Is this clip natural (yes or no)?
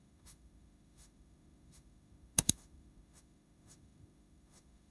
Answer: no